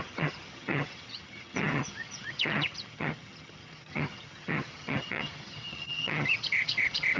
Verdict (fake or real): fake